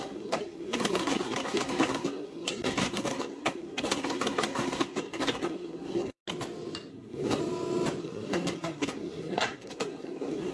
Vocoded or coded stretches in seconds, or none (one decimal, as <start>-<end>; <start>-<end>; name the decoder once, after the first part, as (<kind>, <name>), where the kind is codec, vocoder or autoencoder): 0.0-6.2 (codec, SNAC); 6.9-7.4; 8.0-10.5